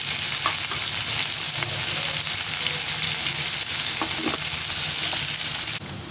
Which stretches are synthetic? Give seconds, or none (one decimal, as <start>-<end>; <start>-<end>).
none